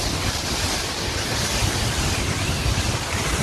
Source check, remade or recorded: recorded